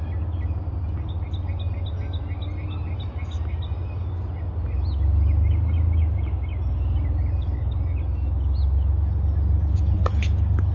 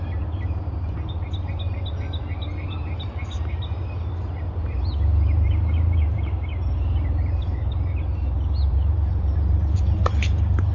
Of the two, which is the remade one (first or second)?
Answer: second